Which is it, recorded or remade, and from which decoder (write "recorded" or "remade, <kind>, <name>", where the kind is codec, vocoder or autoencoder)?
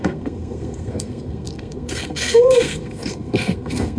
remade, codec, SNAC